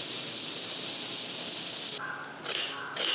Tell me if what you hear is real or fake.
real